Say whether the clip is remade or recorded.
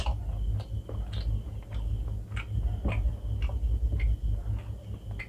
recorded